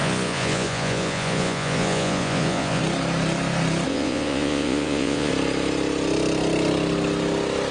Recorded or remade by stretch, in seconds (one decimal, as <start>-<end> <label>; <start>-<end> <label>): 0.0-2.8 remade; 2.8-3.9 recorded; 3.9-5.3 remade; 5.3-7.7 recorded